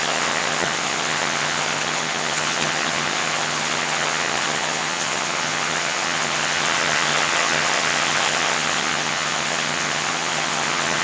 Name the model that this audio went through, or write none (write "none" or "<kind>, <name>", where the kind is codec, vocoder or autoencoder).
vocoder, HiFi-GAN